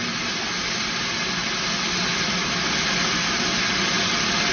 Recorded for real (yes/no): yes